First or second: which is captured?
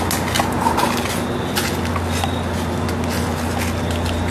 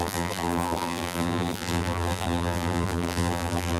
first